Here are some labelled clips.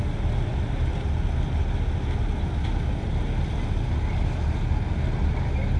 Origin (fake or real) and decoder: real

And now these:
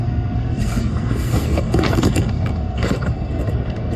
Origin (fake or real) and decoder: fake, codec, SNAC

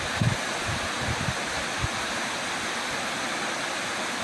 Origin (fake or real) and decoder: real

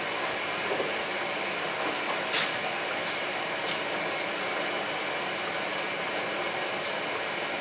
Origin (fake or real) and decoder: real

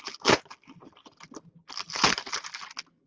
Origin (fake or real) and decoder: real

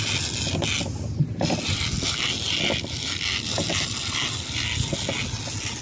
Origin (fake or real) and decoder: real